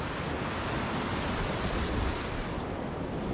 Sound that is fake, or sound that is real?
real